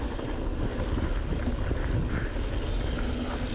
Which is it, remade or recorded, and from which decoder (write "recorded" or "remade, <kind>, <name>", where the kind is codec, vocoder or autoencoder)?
recorded